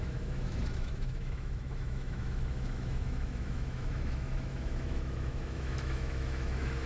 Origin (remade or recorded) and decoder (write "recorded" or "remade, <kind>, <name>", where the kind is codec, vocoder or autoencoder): remade, autoencoder, DAC-VAE